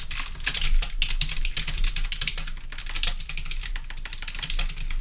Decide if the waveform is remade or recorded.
recorded